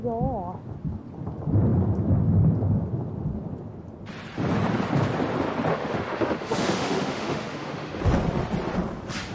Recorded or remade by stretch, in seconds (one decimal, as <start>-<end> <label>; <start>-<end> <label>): 0.0-5.7 recorded; 5.7-8.0 remade; 8.0-9.3 recorded